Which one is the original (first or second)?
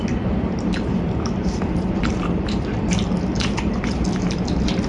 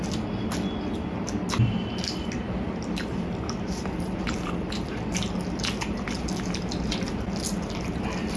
second